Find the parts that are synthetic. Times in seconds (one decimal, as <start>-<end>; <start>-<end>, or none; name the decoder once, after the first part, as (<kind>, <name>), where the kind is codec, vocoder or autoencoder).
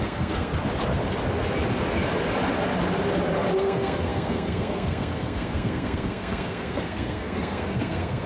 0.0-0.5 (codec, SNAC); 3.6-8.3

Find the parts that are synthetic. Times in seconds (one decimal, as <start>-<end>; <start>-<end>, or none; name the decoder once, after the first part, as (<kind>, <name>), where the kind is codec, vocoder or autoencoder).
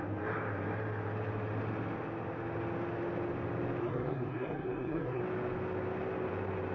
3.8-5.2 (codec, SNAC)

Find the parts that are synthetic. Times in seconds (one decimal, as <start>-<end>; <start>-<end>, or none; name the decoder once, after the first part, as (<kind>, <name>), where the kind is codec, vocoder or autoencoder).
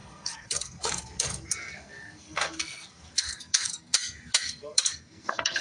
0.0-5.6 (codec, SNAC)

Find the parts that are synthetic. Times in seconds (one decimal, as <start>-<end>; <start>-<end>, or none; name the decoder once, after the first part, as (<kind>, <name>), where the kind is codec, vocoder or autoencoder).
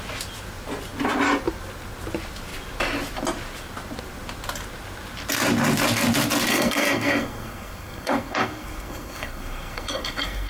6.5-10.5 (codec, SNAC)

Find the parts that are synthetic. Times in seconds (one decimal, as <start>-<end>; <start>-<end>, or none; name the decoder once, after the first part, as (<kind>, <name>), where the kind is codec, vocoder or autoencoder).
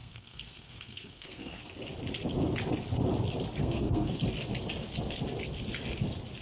0.0-1.6 (codec, SNAC); 3.6-4.2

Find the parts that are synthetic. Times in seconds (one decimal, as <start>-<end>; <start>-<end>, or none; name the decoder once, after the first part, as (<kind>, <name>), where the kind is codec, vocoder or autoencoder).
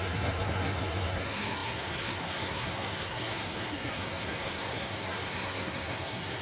0.0-6.4 (codec, SNAC)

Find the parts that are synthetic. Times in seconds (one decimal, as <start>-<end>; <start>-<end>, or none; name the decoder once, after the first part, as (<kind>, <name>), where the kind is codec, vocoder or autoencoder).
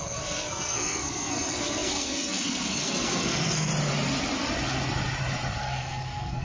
0.0-3.7 (codec, SNAC); 5.6-6.4